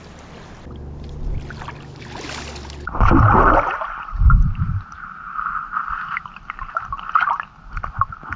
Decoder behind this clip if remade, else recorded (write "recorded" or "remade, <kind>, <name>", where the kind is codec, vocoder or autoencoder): recorded